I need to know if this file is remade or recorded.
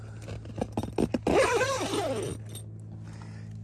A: recorded